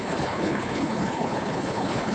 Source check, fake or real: fake